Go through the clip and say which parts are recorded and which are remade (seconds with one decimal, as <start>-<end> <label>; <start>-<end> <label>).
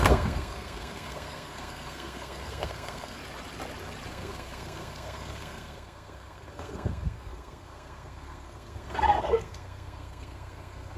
0.0-3.2 remade; 3.2-4.1 recorded; 4.1-11.0 remade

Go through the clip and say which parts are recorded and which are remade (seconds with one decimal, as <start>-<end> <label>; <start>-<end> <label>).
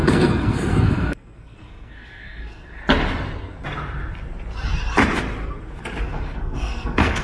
0.0-2.8 remade; 2.8-6.0 recorded; 6.0-7.2 remade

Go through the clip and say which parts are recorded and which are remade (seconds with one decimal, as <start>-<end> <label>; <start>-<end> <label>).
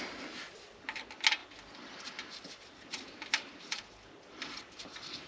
0.0-5.3 recorded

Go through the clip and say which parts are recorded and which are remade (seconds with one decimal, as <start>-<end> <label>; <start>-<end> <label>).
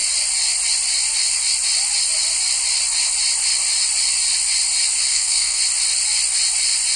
0.0-5.1 recorded; 5.1-5.6 remade; 5.6-7.0 recorded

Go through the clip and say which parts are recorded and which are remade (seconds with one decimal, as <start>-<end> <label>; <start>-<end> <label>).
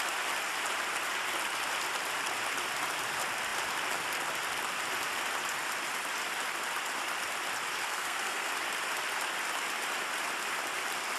0.0-7.8 recorded; 7.8-8.5 remade; 8.5-11.2 recorded